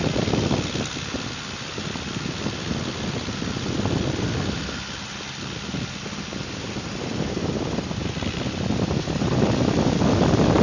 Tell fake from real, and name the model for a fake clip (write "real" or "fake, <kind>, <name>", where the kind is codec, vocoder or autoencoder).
real